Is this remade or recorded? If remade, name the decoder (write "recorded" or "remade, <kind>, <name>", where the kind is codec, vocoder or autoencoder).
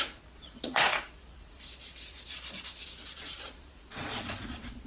remade, vocoder, Vocos